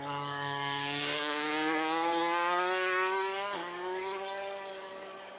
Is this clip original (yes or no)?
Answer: no